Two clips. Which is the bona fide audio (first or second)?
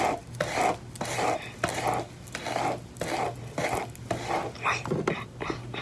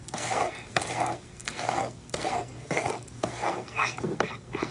first